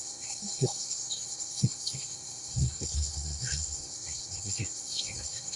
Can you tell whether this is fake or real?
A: fake